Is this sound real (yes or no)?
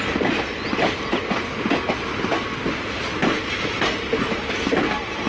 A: yes